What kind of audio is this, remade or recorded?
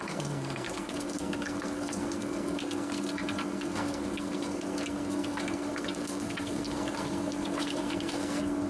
remade